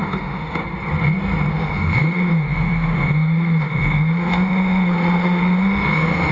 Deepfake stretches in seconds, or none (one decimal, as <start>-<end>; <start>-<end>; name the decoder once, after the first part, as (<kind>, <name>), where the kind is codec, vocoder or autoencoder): 0.0-0.6 (autoencoder, DAC-VAE); 1.5-6.3